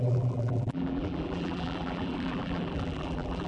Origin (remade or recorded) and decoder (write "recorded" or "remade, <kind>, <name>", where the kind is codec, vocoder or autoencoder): remade, vocoder, BigVGAN v2